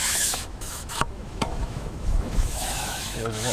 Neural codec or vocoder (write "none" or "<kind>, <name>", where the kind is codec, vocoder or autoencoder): autoencoder, DAC-VAE